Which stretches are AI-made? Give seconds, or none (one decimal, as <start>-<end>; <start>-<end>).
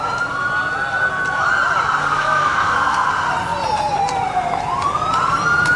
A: 2.0-3.1